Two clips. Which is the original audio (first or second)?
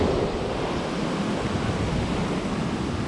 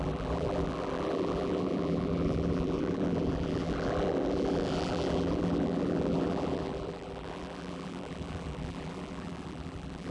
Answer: first